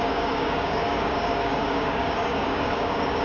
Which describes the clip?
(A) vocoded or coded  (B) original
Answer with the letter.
A